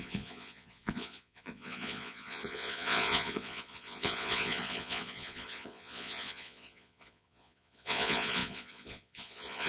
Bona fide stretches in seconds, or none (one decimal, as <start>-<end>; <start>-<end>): none